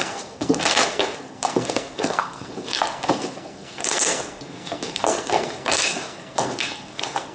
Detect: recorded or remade remade